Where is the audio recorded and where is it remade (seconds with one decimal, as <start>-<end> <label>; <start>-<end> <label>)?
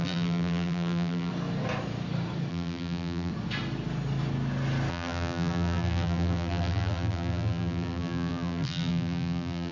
0.0-1.3 remade; 1.3-2.5 recorded; 2.5-3.3 remade; 3.3-4.9 recorded; 4.9-9.7 remade